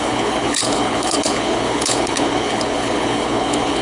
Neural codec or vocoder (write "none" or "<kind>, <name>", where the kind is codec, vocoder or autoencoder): codec, HILCodec